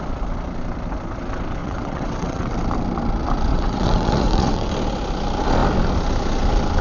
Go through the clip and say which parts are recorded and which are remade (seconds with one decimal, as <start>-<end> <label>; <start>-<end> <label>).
0.0-1.6 recorded; 1.6-2.5 remade; 2.5-3.5 recorded; 3.5-4.7 remade; 4.7-6.8 recorded